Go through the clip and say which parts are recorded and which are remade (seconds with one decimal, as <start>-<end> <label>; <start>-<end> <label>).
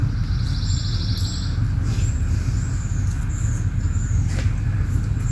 0.0-5.3 recorded